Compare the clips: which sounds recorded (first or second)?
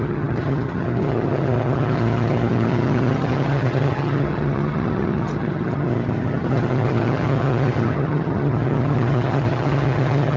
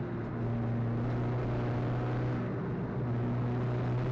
second